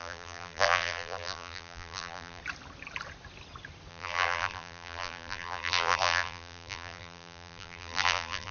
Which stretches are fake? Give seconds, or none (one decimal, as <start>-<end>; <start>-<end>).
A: 0.0-2.4; 3.9-8.5